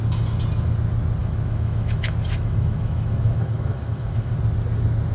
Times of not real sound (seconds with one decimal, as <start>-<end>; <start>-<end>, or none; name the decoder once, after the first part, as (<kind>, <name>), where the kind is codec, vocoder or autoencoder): 1.2-4.3 (autoencoder, DAC-VAE)